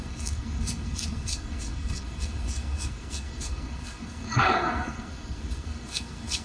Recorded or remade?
remade